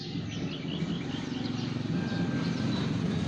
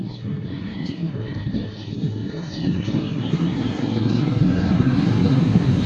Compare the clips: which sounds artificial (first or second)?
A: second